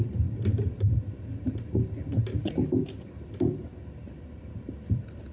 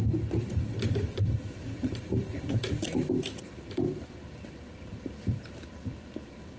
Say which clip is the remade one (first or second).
second